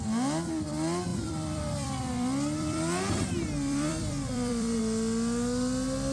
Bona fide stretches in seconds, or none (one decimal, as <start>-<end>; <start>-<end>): 0.0-1.1; 4.8-6.1